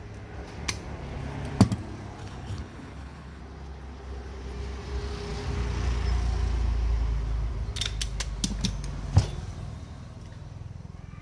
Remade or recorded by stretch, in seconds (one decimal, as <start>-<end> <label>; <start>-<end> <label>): 0.0-2.2 recorded; 2.2-3.4 remade; 3.4-11.2 recorded